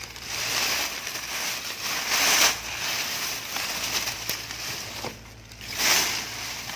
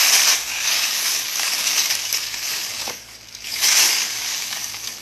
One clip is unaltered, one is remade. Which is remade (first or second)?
second